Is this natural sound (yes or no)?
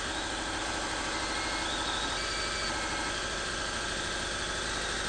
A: yes